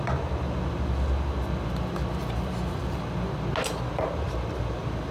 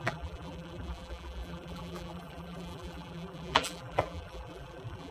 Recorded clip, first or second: first